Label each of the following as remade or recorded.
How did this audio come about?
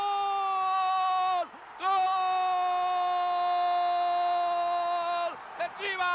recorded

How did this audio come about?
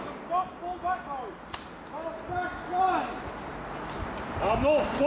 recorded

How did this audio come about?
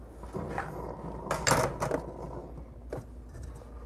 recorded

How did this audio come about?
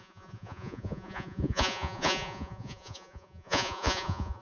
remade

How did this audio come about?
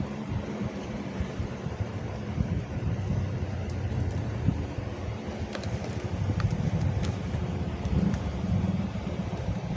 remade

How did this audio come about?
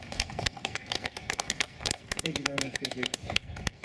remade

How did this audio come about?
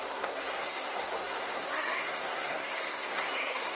remade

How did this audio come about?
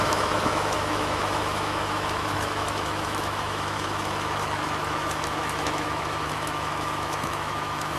remade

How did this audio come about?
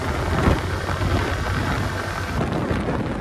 recorded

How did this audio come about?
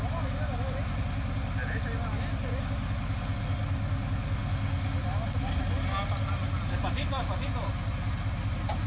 recorded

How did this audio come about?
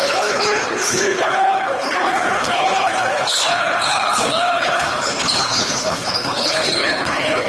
remade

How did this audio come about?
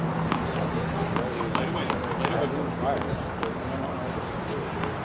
recorded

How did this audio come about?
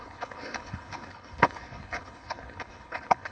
remade